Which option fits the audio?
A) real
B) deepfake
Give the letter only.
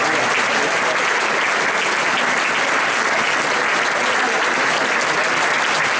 A